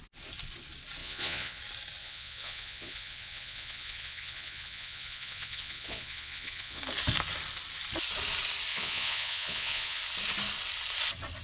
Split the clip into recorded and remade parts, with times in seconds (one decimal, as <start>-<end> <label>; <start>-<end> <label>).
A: 0.0-1.0 recorded; 1.0-1.6 remade; 1.6-2.0 recorded; 2.0-6.8 remade; 6.8-8.7 recorded; 8.7-10.0 remade; 10.0-11.4 recorded